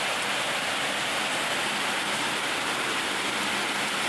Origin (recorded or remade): recorded